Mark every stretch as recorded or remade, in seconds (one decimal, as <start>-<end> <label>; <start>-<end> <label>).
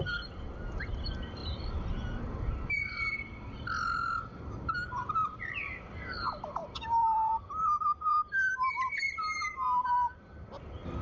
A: 0.0-1.4 remade; 1.4-1.9 recorded; 1.9-11.0 remade